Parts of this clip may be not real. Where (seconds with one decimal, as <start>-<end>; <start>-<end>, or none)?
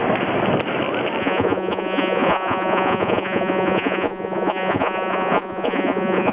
1.2-6.3